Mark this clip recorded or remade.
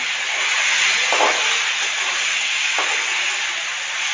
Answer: recorded